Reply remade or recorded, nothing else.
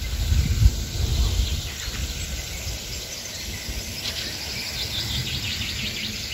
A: recorded